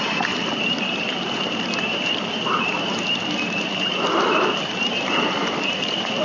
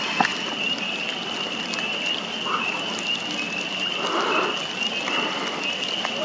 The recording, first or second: second